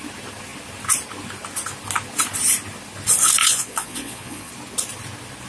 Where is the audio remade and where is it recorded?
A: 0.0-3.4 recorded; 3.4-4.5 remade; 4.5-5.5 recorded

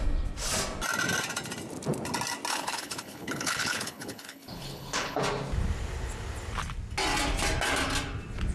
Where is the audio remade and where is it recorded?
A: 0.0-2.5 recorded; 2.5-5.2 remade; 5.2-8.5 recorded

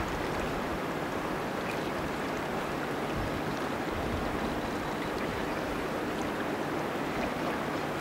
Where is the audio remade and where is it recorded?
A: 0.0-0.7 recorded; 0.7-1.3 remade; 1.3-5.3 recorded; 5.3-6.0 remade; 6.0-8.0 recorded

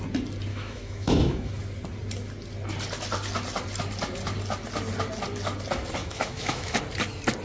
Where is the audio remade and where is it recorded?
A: 0.0-0.5 recorded; 0.5-1.5 remade; 1.5-6.0 recorded; 6.0-6.8 remade; 6.8-7.4 recorded

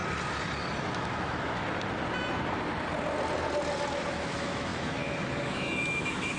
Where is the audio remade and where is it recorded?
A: 0.0-0.9 recorded; 0.9-1.6 remade; 1.6-4.1 recorded; 4.1-6.4 remade

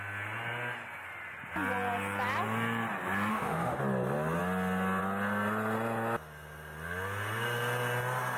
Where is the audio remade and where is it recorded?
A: 0.0-3.3 recorded; 3.3-3.8 remade; 3.8-8.4 recorded